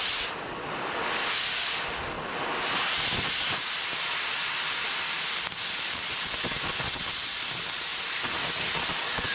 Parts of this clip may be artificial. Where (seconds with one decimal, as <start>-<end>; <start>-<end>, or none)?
none